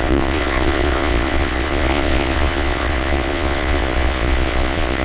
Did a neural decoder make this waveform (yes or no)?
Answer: yes